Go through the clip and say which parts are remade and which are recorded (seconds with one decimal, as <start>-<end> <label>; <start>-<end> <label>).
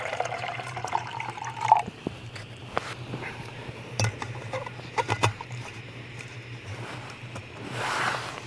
0.0-2.6 remade; 2.6-3.1 recorded; 3.1-8.5 remade